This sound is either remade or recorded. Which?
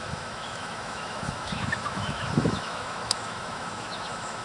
remade